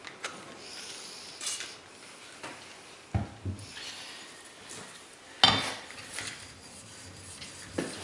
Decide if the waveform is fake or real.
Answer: real